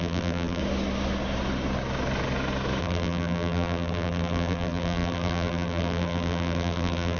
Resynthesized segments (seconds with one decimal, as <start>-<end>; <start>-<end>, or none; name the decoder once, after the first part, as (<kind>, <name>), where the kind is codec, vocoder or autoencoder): 0.0-0.6 (vocoder, BigVGAN v2); 2.8-7.2